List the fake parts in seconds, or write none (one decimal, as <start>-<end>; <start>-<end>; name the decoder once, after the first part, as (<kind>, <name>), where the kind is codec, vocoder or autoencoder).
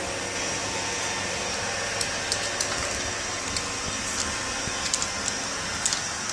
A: none